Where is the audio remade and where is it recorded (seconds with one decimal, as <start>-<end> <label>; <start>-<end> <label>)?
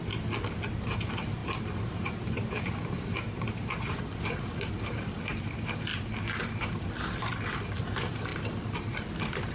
0.0-1.4 recorded; 1.4-5.1 remade; 5.1-9.5 recorded